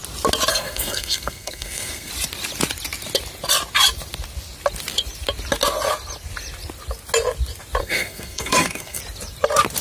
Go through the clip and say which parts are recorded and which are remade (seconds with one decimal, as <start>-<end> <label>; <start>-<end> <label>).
0.0-0.5 recorded; 0.5-2.1 remade; 2.1-7.8 recorded; 7.8-9.0 remade; 9.0-9.8 recorded